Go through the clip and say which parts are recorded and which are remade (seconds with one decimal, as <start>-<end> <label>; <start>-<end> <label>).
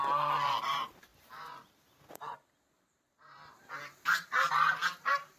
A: 0.0-0.6 recorded; 0.6-5.4 remade